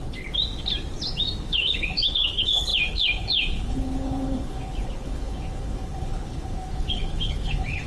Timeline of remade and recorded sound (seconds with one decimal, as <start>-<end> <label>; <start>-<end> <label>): 0.0-0.4 remade; 0.4-1.4 recorded; 1.4-7.9 remade